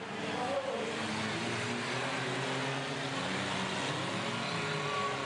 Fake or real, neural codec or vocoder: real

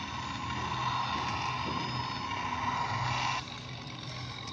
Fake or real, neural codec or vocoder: real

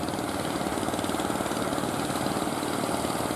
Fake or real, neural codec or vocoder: real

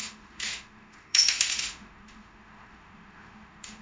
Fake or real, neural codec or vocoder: fake, autoencoder, DAC-VAE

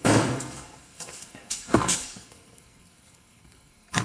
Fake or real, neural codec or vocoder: fake, codec, SNAC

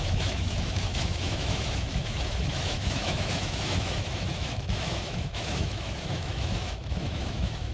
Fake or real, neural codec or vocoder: fake, autoencoder, DAC-VAE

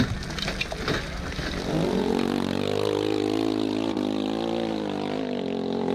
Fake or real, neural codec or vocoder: real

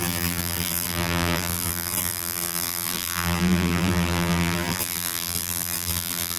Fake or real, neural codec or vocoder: fake, vocoder, BigVGAN v2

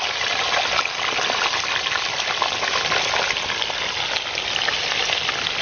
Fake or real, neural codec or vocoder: real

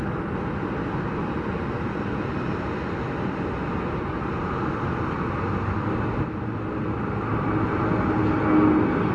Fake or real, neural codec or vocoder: real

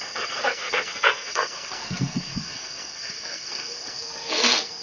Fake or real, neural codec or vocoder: fake, codec, SNAC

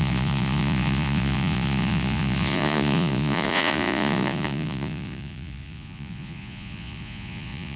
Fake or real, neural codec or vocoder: fake, vocoder, Vocos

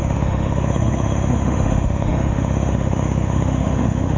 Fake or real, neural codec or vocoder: fake, autoencoder, DAC-VAE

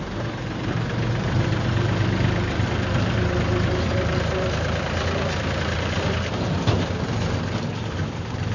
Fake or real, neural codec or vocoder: fake, vocoder, BigVGAN v2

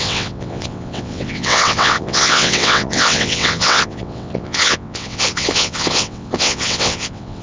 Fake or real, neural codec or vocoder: fake, vocoder, WaveNeXt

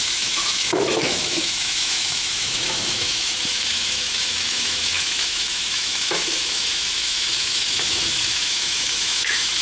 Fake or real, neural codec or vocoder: fake, autoencoder, DAC-VAE